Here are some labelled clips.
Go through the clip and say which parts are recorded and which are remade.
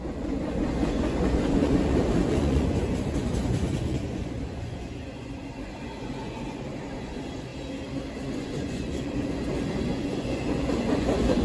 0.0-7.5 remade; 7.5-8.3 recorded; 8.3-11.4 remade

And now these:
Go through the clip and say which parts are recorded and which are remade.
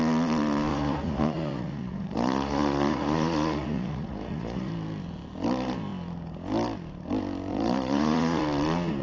0.0-0.7 recorded; 0.7-4.7 remade; 4.7-7.5 recorded; 7.5-8.4 remade; 8.4-9.0 recorded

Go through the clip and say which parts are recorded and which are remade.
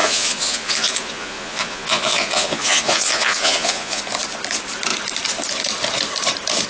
0.0-4.0 remade; 4.0-6.7 recorded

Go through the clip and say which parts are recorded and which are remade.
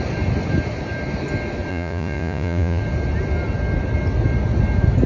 0.0-1.7 recorded; 1.7-2.8 remade; 2.8-5.1 recorded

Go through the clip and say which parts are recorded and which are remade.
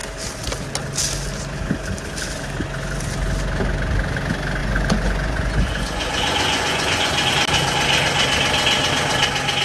0.0-4.6 recorded; 4.6-7.3 remade; 7.3-9.6 recorded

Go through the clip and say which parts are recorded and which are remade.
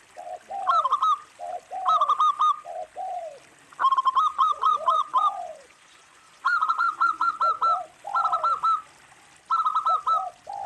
0.0-4.3 recorded; 4.3-7.3 remade; 7.3-10.7 recorded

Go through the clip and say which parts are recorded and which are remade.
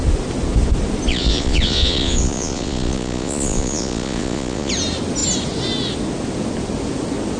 0.0-1.1 recorded; 1.1-4.7 remade; 4.7-7.4 recorded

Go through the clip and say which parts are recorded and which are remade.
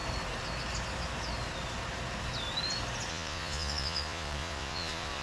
0.0-3.1 recorded; 3.1-5.2 remade